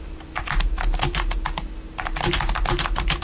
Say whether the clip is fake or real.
real